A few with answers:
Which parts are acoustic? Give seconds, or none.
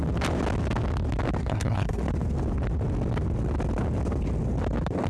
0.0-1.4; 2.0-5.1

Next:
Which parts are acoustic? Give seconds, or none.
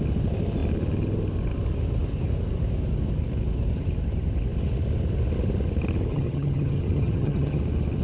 0.0-6.1; 7.6-8.0